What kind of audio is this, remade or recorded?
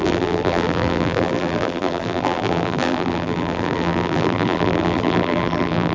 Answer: remade